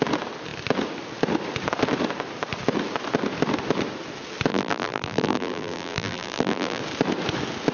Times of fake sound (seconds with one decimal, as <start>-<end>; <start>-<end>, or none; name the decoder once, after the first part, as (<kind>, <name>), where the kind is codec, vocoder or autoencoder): 4.5-6.8 (vocoder, BigVGAN v2)

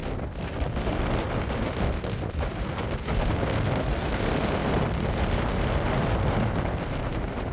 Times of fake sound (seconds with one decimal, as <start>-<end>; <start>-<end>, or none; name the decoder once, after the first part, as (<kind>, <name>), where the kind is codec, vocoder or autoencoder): 4.6-7.5 (vocoder, BigVGAN v2)

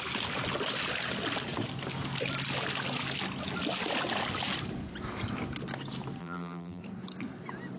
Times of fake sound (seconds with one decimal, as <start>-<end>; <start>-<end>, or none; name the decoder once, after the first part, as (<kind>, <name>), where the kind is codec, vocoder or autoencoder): 6.2-6.8 (vocoder, BigVGAN v2)

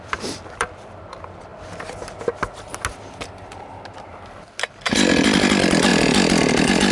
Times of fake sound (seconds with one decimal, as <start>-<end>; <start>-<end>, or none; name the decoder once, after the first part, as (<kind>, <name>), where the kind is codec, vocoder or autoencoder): 0.0-1.5 (vocoder, BigVGAN v2); 4.0-5.9; 6.5-6.9

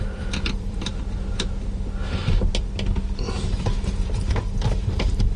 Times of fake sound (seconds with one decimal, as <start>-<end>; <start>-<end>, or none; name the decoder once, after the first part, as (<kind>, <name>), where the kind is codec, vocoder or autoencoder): 0.0-0.9 (vocoder, BigVGAN v2); 3.5-5.4

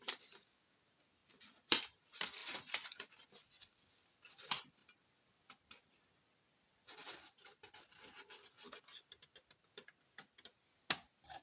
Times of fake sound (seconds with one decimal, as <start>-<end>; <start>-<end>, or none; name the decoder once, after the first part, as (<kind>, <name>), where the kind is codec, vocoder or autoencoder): 1.2-1.8 (vocoder, BigVGAN v2); 7.0-8.0

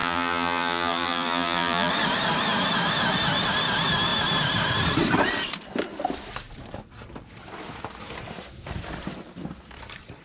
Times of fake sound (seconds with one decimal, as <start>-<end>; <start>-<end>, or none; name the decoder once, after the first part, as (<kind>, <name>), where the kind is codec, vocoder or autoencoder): 0.0-1.9 (vocoder, BigVGAN v2)

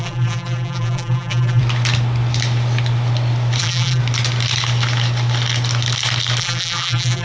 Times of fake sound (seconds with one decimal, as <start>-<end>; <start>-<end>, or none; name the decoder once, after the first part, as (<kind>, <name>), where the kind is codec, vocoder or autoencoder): 0.0-1.6 (vocoder, BigVGAN v2); 3.6-4.0; 6.4-7.2